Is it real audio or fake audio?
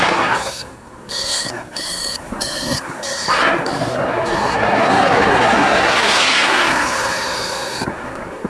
fake